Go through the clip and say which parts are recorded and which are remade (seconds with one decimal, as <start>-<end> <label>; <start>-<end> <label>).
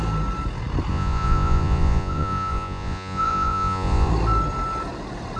0.0-0.9 recorded; 0.9-4.1 remade; 4.1-5.4 recorded